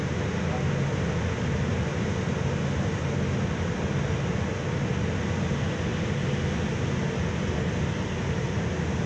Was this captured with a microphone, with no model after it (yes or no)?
yes